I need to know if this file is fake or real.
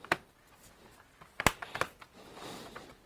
real